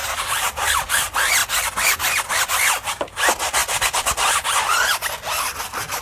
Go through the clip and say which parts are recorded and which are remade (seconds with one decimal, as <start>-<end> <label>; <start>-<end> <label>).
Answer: 0.0-6.0 recorded